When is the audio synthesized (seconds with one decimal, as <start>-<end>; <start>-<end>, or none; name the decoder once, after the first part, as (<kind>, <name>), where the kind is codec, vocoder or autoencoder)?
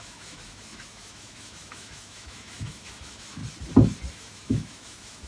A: 0.0-3.4 (autoencoder, DAC-VAE); 4.1-5.3